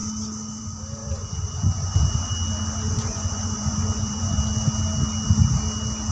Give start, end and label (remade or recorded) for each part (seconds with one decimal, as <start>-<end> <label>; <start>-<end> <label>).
0.0-1.0 recorded; 1.0-2.3 remade; 2.3-2.9 recorded; 2.9-4.5 remade; 4.5-6.1 recorded